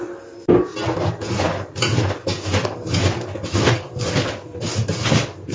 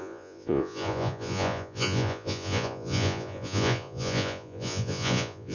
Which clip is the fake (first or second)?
second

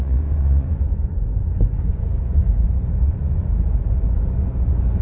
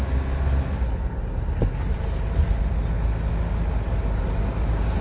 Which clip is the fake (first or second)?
first